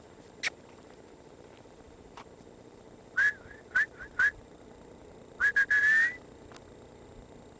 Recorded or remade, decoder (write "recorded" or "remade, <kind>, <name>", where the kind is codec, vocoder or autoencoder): recorded